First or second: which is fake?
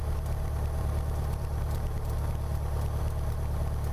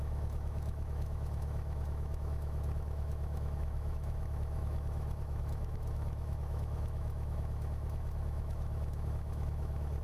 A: second